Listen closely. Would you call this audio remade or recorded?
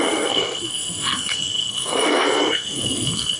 remade